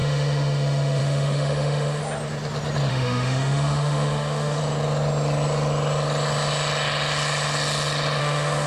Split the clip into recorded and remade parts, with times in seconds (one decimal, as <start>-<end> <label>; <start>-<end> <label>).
0.0-2.0 remade; 2.0-2.9 recorded; 2.9-4.6 remade; 4.6-8.2 recorded; 8.2-8.7 remade